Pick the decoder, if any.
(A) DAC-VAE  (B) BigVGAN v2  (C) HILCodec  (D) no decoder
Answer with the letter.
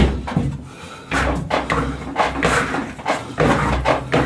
D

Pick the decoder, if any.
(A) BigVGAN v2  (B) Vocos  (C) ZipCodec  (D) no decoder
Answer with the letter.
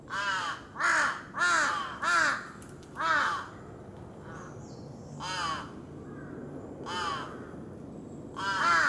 D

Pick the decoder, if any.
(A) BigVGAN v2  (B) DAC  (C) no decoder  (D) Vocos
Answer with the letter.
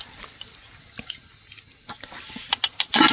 C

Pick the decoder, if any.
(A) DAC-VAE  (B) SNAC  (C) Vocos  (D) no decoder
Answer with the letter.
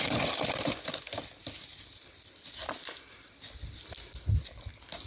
D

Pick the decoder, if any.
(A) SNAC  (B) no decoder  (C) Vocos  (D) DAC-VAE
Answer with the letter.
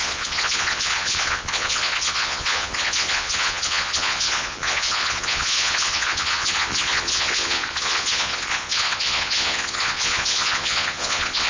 C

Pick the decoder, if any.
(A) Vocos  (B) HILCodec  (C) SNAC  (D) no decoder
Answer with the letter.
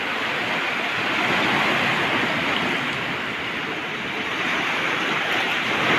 D